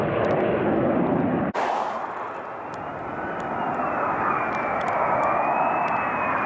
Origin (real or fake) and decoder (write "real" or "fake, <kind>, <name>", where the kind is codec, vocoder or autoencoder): real